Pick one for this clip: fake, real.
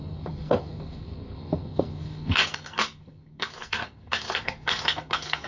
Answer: fake